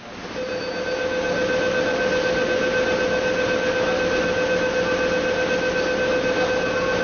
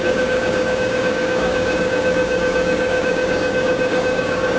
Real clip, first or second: first